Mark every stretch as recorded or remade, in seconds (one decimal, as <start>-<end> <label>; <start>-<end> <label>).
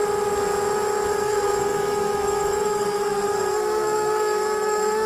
0.0-1.1 recorded; 1.1-5.1 remade